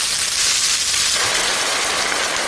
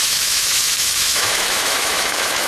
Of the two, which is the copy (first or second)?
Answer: second